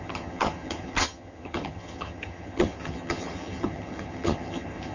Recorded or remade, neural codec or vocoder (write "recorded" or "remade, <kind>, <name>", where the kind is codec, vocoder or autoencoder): remade, vocoder, HiFi-GAN